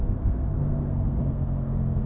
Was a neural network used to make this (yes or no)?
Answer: yes